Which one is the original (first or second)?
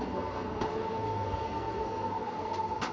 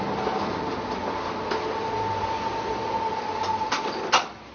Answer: second